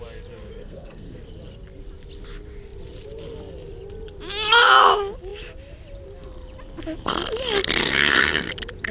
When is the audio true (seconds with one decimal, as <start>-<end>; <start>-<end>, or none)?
0.0-0.6; 1.2-7.8; 8.5-8.9